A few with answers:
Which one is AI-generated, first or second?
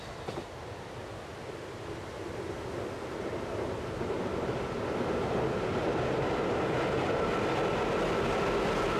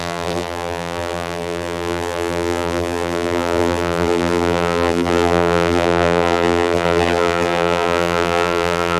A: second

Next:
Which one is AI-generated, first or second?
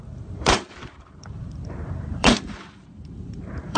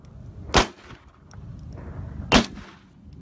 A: first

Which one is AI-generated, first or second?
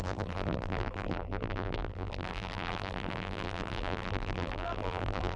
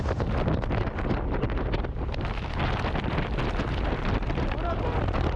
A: first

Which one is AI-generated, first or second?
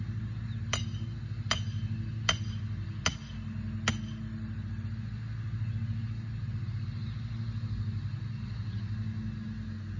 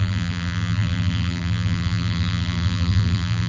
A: second